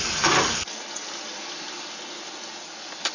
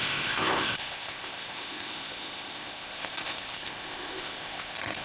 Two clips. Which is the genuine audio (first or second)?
first